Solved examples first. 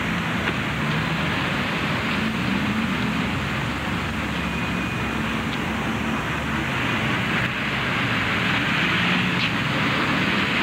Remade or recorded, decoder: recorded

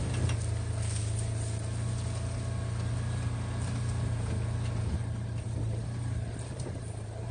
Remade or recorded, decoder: recorded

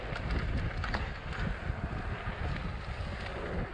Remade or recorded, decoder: recorded